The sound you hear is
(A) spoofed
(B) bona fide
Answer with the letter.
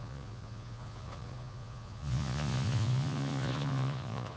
A